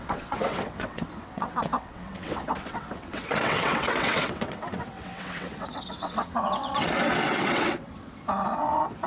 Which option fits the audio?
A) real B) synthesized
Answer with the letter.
B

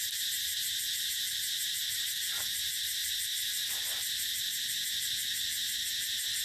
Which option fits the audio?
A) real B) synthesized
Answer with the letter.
A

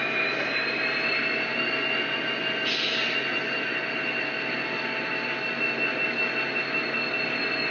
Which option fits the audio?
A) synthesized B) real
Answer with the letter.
B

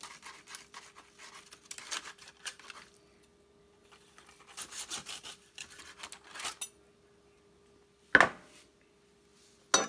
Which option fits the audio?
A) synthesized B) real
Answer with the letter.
B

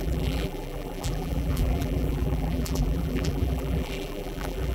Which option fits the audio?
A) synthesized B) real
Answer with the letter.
A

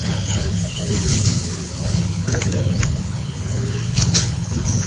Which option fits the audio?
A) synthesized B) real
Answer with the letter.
A